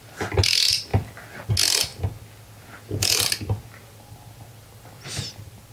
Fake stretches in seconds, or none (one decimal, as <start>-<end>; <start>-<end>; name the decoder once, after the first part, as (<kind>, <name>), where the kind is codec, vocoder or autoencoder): none